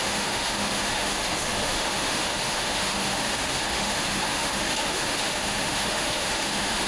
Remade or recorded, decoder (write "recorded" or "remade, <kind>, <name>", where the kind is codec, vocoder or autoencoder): remade, autoencoder, DAC-VAE